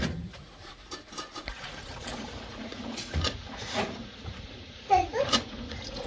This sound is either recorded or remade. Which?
remade